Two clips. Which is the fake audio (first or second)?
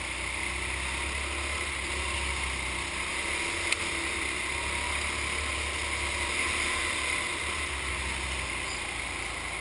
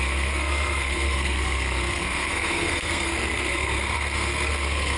second